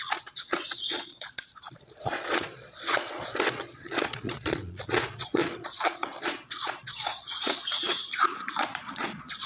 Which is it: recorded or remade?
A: remade